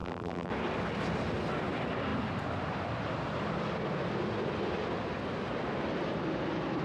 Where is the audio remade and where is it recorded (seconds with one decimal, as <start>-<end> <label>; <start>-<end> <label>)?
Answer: 0.0-0.5 remade; 0.5-6.8 recorded